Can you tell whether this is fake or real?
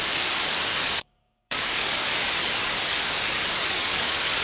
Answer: fake